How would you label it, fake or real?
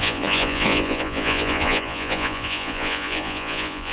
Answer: fake